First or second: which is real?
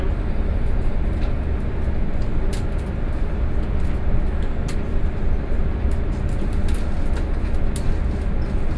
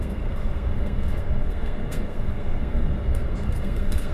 first